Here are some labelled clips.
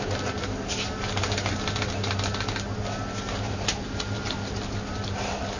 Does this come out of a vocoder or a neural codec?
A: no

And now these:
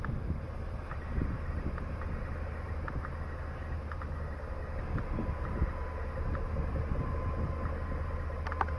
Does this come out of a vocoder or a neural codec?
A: no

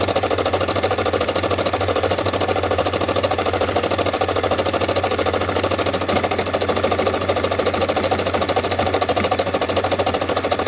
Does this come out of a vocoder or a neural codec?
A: no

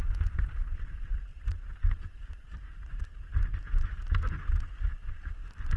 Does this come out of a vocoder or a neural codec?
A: no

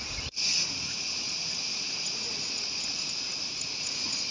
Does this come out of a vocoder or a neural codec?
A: yes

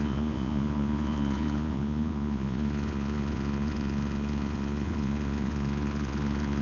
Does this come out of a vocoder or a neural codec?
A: yes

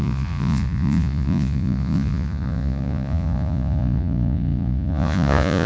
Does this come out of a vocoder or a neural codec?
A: yes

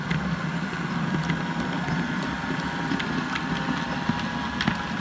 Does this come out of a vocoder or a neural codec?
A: no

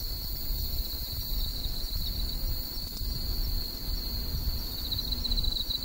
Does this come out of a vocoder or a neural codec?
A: no